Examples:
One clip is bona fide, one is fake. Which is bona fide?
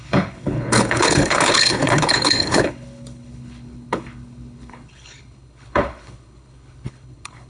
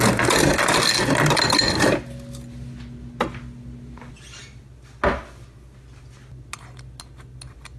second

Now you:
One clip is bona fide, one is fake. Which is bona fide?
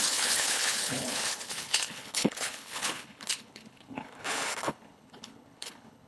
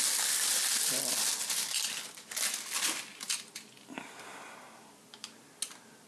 second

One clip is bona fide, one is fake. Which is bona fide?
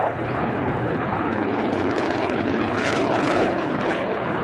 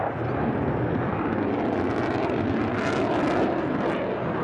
second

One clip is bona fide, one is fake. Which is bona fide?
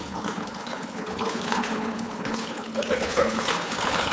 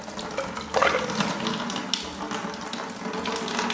second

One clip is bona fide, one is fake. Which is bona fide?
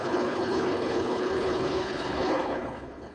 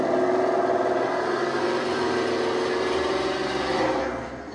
second